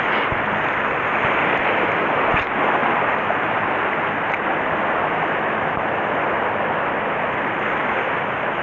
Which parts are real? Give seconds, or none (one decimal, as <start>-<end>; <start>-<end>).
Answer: 0.0-2.8; 3.9-8.6